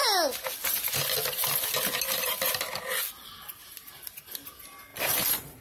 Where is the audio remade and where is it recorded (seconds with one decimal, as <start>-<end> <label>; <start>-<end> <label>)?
0.0-4.9 recorded; 4.9-5.6 remade

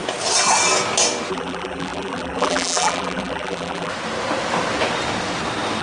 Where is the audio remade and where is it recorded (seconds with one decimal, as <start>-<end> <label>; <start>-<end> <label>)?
0.0-1.3 recorded; 1.3-3.9 remade; 3.9-5.8 recorded

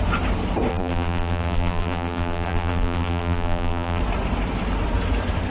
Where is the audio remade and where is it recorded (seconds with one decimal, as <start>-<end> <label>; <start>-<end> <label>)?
0.0-0.7 recorded; 0.7-4.0 remade; 4.0-5.5 recorded

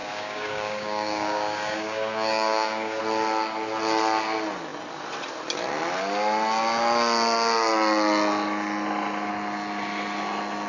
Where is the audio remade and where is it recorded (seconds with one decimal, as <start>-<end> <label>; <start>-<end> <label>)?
0.0-3.0 remade; 3.0-10.7 recorded

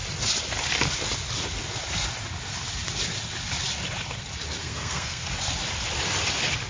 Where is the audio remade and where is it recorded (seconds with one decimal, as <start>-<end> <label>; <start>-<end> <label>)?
0.0-4.6 recorded; 4.6-5.3 remade; 5.3-6.7 recorded